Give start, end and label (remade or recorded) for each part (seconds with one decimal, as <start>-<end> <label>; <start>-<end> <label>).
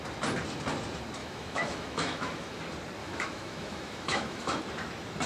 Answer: 0.0-1.2 recorded; 1.2-2.6 remade; 2.6-3.0 recorded; 3.0-4.6 remade; 4.6-5.3 recorded